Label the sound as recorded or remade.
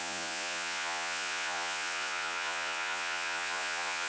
remade